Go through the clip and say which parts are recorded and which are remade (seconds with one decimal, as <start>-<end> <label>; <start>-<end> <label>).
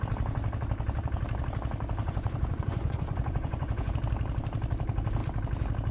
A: 0.0-2.0 recorded; 2.0-3.9 remade; 3.9-5.9 recorded